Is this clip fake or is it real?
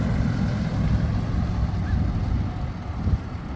real